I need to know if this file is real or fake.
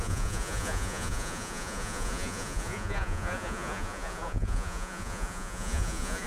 fake